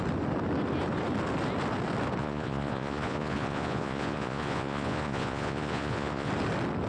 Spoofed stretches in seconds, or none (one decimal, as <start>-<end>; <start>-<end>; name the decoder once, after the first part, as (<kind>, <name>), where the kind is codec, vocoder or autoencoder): 2.2-6.3 (vocoder, Vocos)